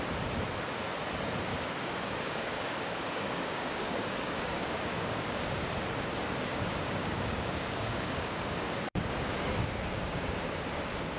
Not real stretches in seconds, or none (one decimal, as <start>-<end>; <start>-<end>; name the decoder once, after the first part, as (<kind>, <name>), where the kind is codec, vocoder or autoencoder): 1.5-5.6 (codec, DAC); 6.5-10.3